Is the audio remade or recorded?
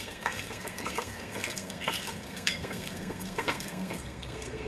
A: remade